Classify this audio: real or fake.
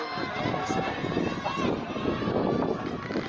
real